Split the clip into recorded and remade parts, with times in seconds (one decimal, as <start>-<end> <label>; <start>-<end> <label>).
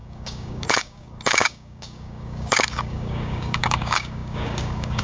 0.0-5.0 remade